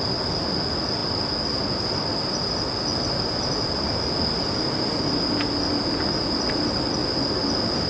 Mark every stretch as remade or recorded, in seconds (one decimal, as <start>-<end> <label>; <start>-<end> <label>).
0.0-7.9 recorded